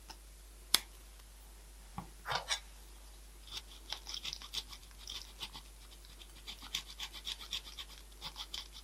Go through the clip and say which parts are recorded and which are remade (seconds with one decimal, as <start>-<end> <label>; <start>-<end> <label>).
0.0-8.8 recorded